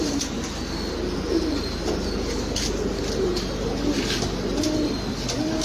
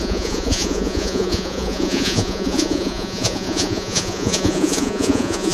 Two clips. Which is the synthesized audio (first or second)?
second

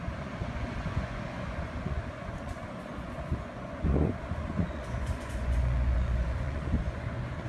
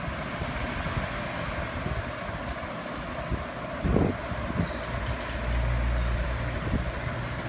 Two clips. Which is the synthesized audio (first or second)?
first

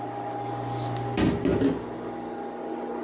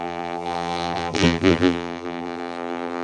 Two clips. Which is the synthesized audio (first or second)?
second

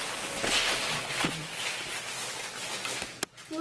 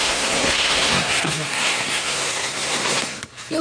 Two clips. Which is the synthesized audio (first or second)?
second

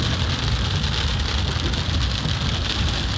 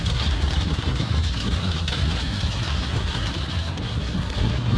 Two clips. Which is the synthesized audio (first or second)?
second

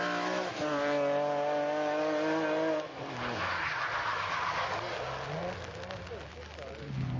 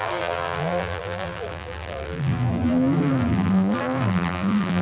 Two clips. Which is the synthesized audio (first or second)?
second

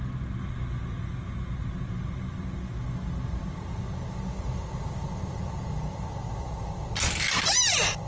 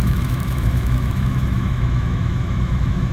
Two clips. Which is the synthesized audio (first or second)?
second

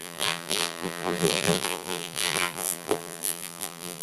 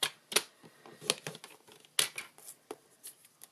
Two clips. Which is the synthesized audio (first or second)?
first